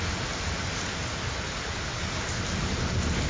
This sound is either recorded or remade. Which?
recorded